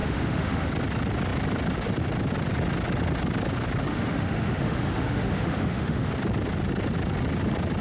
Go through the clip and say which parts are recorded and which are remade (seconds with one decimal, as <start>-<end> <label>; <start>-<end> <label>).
0.0-0.7 remade; 0.7-3.9 recorded; 3.9-6.1 remade; 6.1-7.8 recorded